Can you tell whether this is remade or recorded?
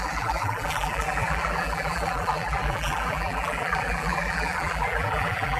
remade